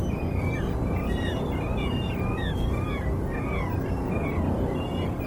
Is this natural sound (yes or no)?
yes